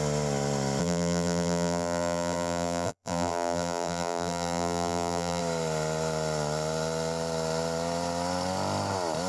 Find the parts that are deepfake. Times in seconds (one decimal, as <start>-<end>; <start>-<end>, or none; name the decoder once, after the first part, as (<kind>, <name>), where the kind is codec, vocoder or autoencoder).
0.8-5.4 (vocoder, BigVGAN v2)